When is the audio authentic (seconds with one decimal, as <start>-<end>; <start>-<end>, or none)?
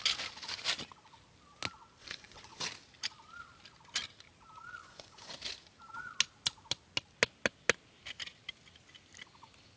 0.0-2.0; 2.6-4.8; 5.3-9.8